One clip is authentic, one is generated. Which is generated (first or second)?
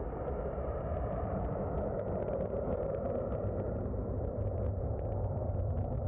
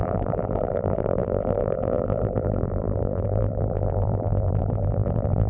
second